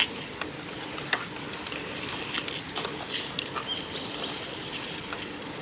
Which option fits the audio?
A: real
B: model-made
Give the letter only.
A